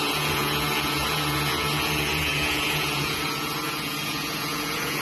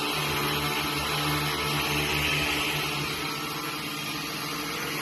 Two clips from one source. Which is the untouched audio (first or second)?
second